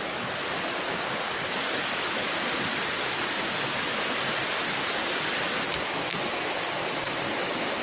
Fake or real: real